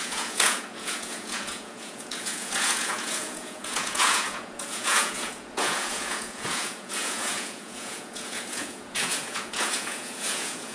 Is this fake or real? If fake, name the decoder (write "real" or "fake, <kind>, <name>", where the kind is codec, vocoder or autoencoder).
fake, vocoder, Vocos